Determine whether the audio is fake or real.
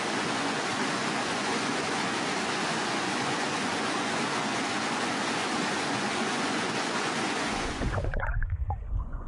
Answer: fake